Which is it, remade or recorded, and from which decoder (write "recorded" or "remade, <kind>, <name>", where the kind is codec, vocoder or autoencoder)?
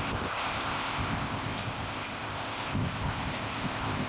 remade, codec, ZipCodec